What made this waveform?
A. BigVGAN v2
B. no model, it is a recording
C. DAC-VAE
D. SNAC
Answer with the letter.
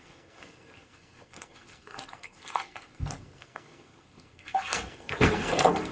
D